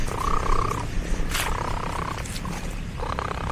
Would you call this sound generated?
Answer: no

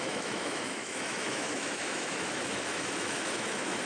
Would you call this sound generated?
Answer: yes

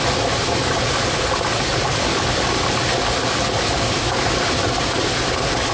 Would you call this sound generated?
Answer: no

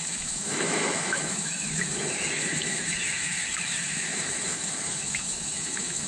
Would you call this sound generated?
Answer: yes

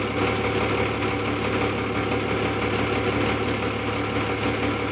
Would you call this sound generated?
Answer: no